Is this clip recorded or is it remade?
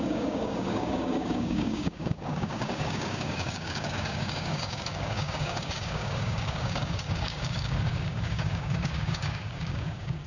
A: remade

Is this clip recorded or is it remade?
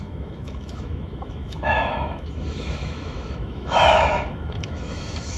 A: remade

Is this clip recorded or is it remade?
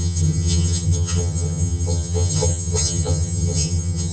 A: remade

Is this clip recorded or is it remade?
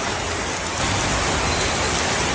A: recorded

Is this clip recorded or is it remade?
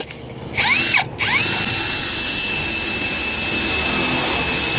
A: recorded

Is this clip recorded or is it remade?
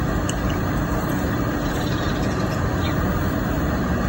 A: recorded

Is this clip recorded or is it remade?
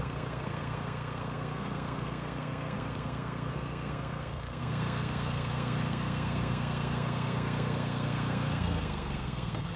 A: remade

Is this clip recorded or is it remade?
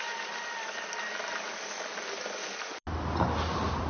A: recorded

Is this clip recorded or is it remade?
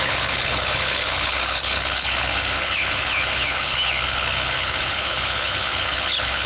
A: remade